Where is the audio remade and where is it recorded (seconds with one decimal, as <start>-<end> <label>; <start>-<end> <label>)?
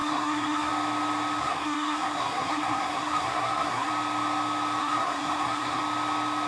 0.0-0.7 remade; 0.7-1.4 recorded; 1.4-3.9 remade; 3.9-4.8 recorded; 4.8-5.8 remade; 5.8-6.5 recorded